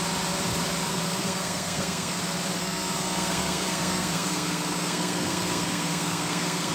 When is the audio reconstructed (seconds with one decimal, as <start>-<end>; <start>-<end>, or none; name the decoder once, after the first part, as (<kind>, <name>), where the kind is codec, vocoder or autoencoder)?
0.9-2.2 (codec, SNAC); 2.6-6.7